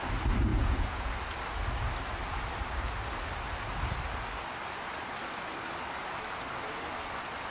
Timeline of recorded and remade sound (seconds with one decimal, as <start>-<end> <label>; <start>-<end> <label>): 0.0-0.5 recorded; 0.5-1.1 remade; 1.1-7.5 recorded